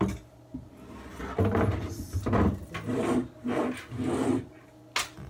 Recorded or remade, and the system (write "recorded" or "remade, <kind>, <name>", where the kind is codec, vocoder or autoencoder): recorded